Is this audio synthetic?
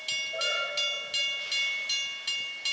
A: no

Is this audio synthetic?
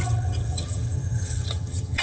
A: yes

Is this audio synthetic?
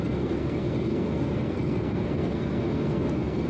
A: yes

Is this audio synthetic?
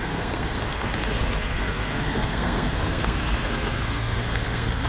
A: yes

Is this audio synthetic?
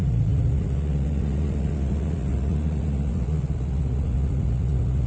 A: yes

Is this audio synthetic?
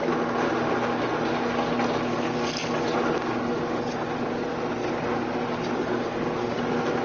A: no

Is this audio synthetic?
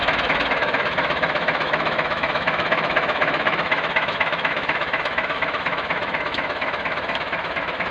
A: yes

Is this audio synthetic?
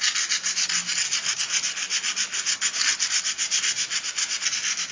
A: no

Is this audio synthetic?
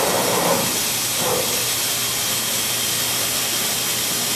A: no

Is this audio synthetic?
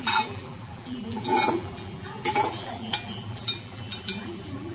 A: yes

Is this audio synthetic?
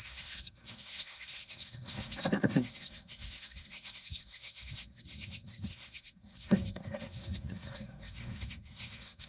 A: yes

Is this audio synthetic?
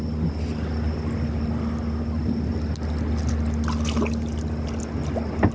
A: no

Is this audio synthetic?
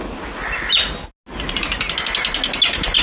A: no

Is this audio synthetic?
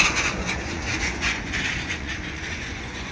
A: yes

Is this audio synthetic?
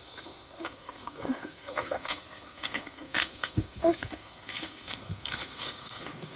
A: yes